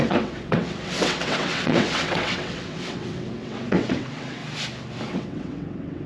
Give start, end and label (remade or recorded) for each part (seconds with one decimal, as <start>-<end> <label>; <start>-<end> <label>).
0.0-4.4 remade; 4.4-5.1 recorded; 5.1-6.1 remade